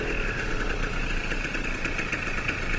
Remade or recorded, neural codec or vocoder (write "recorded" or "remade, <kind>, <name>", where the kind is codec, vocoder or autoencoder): recorded